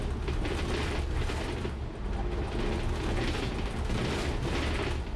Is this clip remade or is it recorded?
recorded